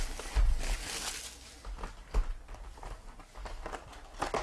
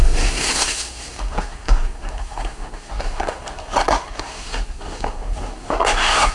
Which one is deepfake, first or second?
second